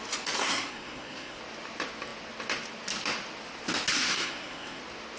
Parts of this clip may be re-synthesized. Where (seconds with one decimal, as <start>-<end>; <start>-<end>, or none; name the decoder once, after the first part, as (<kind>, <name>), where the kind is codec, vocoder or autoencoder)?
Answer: 0.4-1.4 (codec, SNAC); 4.1-4.8